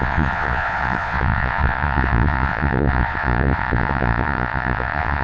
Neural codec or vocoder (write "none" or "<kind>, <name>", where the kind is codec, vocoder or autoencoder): vocoder, Vocos